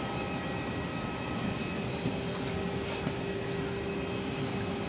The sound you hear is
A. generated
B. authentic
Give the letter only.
B